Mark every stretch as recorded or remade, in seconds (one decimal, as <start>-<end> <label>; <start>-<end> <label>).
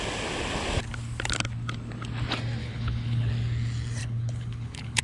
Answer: 0.0-2.6 recorded; 2.6-3.3 remade; 3.3-4.0 recorded; 4.0-5.0 remade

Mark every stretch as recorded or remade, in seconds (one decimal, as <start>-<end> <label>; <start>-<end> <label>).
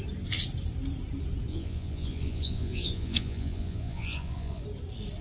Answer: 0.0-1.5 recorded; 1.5-4.6 remade; 4.6-5.2 recorded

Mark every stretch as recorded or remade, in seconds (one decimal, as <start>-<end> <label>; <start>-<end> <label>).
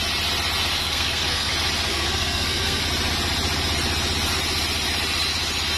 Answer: 0.0-0.8 recorded; 0.8-1.5 remade; 1.5-1.9 recorded; 1.9-2.8 remade; 2.8-5.8 recorded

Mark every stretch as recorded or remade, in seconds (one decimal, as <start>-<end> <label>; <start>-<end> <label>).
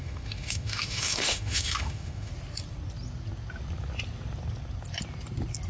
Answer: 0.0-2.3 remade; 2.3-5.7 recorded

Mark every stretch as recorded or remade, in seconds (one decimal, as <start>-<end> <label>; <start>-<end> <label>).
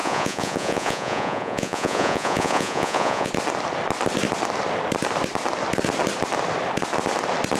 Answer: 0.0-3.3 remade; 3.3-7.6 recorded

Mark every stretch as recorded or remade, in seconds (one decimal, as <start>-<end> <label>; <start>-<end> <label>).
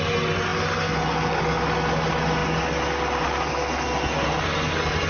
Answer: 0.0-5.1 recorded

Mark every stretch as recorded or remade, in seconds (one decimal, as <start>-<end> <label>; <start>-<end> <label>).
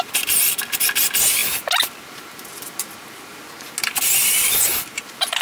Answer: 0.0-5.4 recorded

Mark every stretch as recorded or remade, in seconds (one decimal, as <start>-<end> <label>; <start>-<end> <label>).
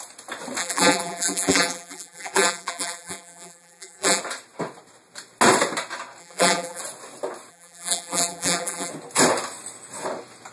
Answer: 0.0-0.6 recorded; 0.6-4.2 remade; 4.2-6.2 recorded; 6.2-6.8 remade; 6.8-7.5 recorded; 7.5-8.9 remade; 8.9-10.5 recorded